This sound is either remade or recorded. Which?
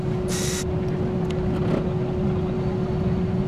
recorded